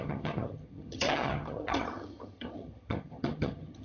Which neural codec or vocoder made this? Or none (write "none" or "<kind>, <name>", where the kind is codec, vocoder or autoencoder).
vocoder, HiFi-GAN